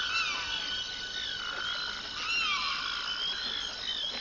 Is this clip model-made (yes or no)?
no